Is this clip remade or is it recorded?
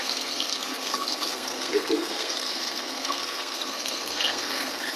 remade